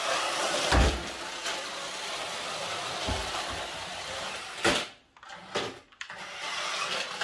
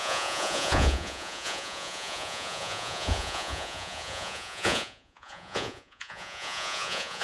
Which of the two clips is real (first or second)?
first